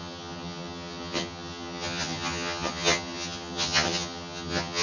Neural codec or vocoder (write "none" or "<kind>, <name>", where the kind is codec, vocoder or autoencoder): vocoder, HiFi-GAN